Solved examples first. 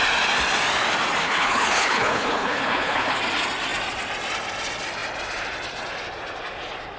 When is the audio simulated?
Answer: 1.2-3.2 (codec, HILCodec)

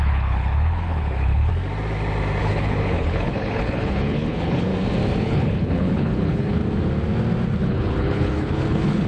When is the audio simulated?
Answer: 0.0-1.5 (codec, HILCodec); 2.4-4.7; 5.2-6.6; 7.6-9.1